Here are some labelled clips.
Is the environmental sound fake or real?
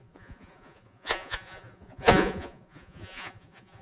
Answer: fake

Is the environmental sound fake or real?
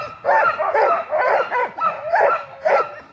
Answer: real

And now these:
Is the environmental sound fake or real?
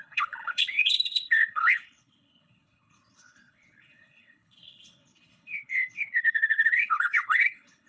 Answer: fake